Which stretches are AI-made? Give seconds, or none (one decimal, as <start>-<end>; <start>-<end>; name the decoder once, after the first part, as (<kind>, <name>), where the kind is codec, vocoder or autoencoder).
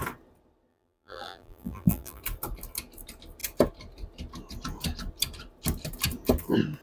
0.7-2.2 (vocoder, BigVGAN v2)